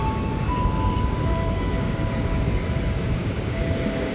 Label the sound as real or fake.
fake